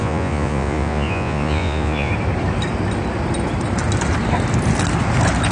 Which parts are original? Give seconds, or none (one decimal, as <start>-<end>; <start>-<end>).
2.1-5.5